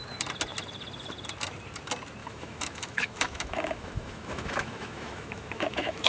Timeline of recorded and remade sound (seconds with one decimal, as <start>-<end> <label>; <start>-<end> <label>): 0.0-2.2 recorded; 2.2-6.1 remade